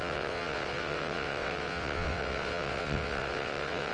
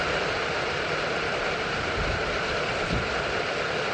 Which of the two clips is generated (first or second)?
first